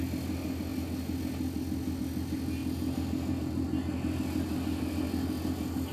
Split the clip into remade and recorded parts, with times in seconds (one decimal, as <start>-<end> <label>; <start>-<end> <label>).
0.0-5.9 recorded